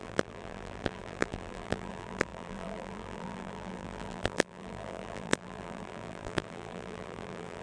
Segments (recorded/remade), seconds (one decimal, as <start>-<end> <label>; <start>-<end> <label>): 0.0-7.6 remade